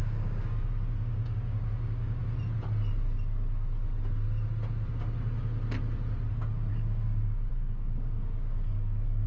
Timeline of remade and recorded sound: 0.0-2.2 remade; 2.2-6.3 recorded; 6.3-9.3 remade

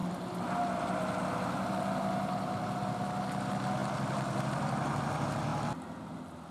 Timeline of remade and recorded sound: 0.0-6.5 recorded

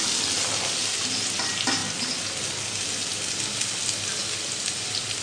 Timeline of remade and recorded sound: 0.0-5.2 recorded

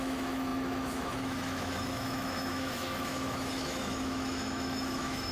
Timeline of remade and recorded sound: 0.0-5.3 remade